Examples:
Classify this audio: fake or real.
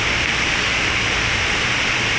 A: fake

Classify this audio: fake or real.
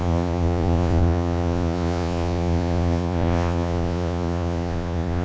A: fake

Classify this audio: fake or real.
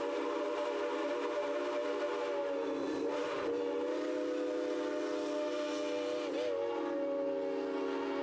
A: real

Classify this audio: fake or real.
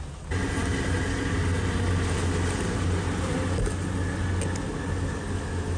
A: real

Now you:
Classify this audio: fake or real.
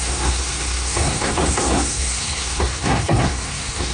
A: fake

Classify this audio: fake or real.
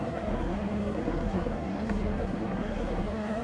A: fake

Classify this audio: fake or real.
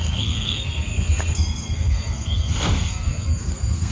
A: fake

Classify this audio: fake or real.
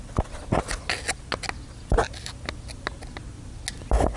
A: real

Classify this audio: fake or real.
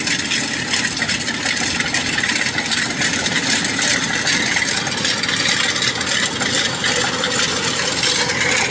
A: real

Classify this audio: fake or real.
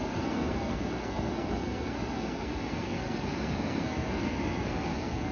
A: fake